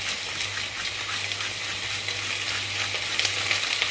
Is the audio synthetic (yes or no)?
no